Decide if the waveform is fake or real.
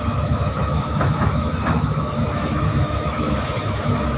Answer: fake